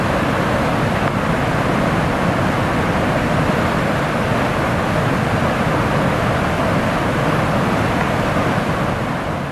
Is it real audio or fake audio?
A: real